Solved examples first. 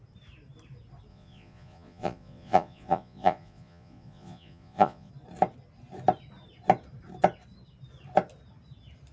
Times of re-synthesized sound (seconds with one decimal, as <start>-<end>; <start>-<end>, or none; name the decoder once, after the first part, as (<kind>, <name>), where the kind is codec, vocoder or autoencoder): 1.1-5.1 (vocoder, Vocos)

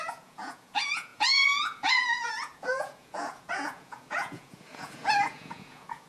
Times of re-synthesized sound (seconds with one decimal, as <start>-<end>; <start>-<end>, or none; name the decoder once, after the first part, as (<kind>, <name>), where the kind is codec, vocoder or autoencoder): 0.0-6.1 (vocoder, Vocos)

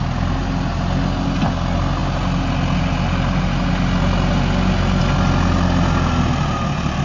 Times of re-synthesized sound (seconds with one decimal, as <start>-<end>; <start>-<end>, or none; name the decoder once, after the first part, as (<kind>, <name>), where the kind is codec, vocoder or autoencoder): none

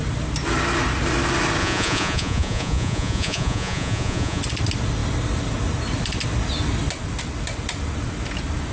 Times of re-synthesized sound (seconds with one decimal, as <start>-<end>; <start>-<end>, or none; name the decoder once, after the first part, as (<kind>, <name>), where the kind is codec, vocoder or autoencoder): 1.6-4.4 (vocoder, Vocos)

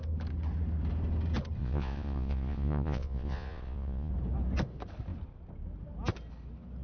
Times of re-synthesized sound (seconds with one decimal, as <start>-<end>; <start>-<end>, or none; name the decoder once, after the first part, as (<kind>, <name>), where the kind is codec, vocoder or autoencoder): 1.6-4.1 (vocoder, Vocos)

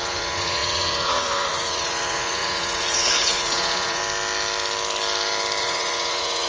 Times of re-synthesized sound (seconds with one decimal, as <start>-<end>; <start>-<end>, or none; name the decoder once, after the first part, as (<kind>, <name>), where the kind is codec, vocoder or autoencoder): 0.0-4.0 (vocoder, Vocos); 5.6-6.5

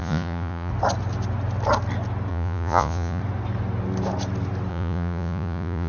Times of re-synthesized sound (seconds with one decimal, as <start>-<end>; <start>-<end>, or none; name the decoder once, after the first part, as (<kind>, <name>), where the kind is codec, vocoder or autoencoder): 0.0-0.7 (vocoder, Vocos); 2.3-3.2; 4.7-5.9